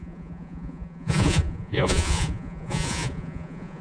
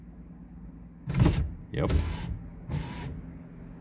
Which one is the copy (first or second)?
first